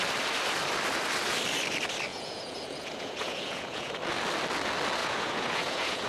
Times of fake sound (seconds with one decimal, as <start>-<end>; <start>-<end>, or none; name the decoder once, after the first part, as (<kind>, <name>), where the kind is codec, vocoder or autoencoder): 2.1-3.9 (vocoder, Vocos); 5.0-6.1